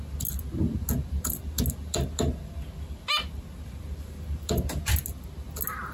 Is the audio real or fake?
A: real